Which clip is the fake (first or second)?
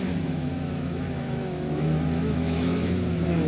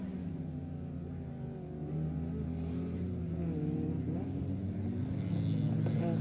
first